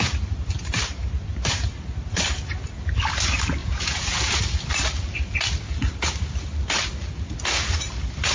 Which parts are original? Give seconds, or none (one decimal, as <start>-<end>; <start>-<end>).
0.0-3.6; 4.3-8.3